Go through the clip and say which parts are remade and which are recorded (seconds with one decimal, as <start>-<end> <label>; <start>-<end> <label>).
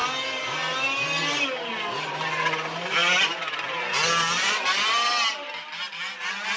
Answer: 0.0-6.6 recorded